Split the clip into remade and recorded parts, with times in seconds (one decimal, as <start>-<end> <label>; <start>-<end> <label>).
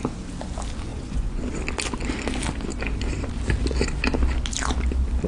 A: 0.0-0.9 recorded; 0.9-1.4 remade; 1.4-5.3 recorded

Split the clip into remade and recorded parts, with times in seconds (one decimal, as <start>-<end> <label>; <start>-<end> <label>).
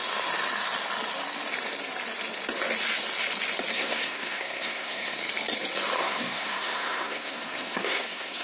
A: 0.0-3.7 recorded; 3.7-5.2 remade; 5.2-6.0 recorded; 6.0-8.4 remade